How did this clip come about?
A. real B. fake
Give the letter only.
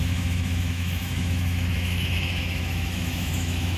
B